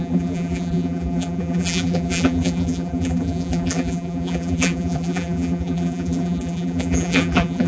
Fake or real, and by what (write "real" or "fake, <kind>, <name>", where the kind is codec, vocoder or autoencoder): fake, vocoder, BigVGAN v2